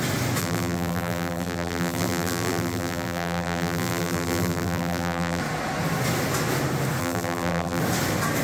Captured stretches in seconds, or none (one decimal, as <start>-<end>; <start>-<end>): 0.0-0.4; 5.4-7.0; 7.8-8.4